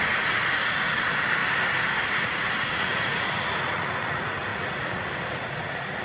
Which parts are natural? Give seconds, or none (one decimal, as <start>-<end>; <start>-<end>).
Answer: 1.4-2.1